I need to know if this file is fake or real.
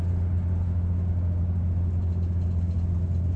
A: real